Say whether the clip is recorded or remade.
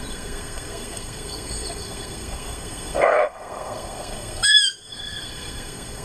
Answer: remade